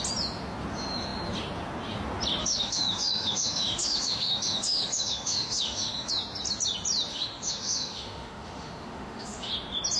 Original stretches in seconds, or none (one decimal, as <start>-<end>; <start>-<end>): 0.0-2.4; 6.1-7.1; 9.5-10.0